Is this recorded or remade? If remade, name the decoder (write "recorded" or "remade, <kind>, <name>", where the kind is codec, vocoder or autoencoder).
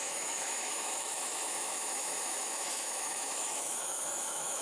remade, autoencoder, DAC-VAE